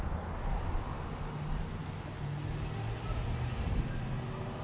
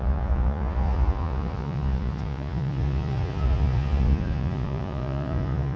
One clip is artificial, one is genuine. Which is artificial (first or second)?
second